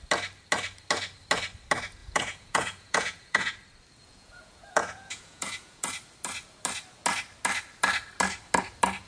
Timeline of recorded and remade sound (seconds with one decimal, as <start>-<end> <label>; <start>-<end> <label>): 0.0-2.0 recorded; 2.0-3.6 remade; 3.6-4.0 recorded; 4.0-5.9 remade; 5.9-9.1 recorded